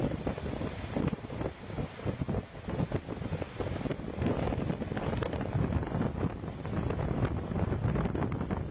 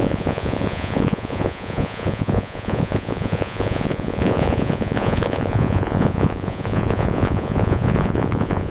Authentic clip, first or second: first